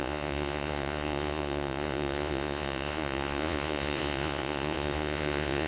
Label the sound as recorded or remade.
remade